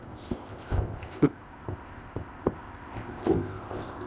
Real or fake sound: fake